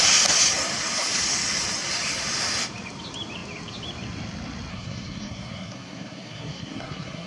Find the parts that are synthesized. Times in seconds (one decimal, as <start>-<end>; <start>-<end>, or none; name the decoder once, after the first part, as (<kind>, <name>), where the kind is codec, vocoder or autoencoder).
4.7-7.3 (codec, SNAC)